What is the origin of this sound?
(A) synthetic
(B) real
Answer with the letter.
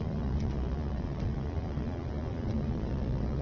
A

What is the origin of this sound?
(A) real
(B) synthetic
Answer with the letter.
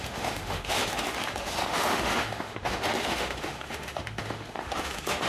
B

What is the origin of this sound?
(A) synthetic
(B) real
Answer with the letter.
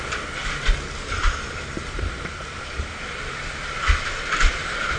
A